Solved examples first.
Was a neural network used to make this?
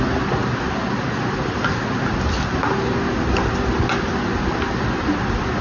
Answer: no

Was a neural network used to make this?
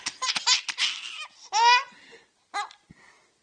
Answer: no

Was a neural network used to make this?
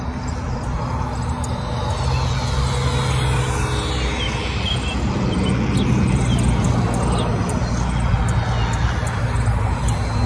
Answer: no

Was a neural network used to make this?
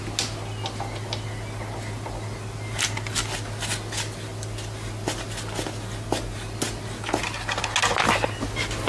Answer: no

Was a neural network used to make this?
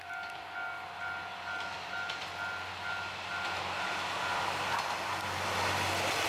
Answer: no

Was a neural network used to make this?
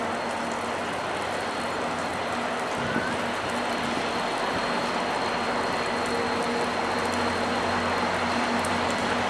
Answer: no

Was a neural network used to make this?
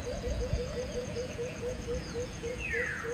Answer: yes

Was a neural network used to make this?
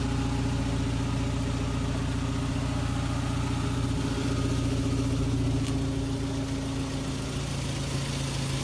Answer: no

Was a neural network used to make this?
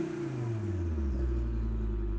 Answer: no